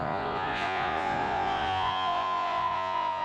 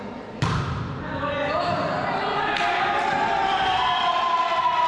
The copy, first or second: first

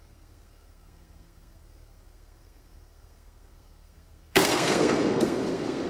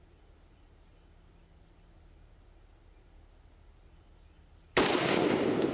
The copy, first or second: first